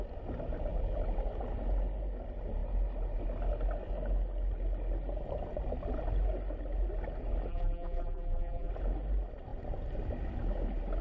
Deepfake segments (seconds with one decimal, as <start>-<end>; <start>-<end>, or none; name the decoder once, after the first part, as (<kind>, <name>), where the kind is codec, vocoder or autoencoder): 7.5-8.7 (vocoder, BigVGAN v2)